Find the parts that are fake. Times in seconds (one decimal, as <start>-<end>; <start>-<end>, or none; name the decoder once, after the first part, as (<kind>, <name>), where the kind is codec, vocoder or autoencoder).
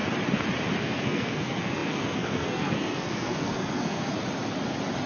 0.8-4.1 (codec, SNAC)